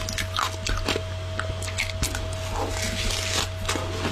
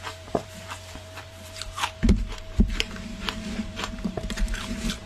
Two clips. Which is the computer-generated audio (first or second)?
second